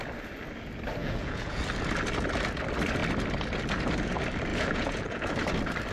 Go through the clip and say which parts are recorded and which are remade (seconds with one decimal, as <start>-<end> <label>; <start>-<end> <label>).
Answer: 0.0-1.0 recorded; 1.0-1.6 remade; 1.6-4.5 recorded; 4.5-5.3 remade; 5.3-5.9 recorded